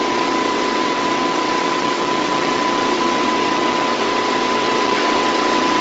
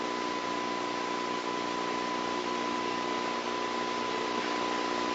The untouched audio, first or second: second